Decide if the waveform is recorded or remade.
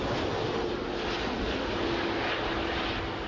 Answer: recorded